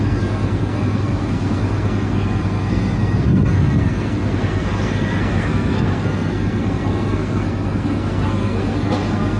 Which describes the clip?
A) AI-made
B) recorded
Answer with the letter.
A